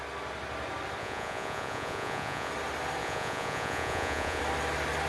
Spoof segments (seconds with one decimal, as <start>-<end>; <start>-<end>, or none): 1.0-2.5; 3.0-4.4